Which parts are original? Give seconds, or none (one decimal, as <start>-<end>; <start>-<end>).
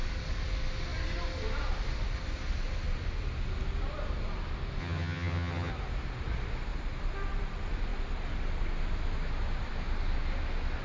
0.0-4.8; 5.7-10.8